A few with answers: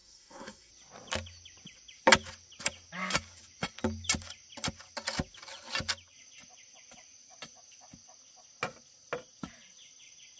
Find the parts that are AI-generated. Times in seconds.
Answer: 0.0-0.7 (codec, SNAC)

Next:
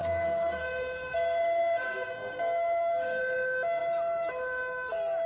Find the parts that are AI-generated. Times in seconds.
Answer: 0.0-3.2 (codec, SNAC)

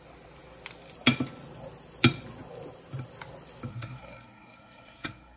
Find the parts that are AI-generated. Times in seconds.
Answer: 3.7-5.4 (codec, SNAC)

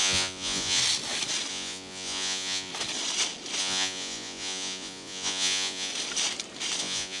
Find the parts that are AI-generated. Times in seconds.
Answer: 0.0-0.8 (vocoder, Vocos); 1.5-2.7; 3.6-5.9; 6.8-7.2